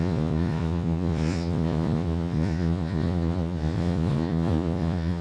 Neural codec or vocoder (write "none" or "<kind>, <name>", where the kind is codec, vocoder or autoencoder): vocoder, Vocos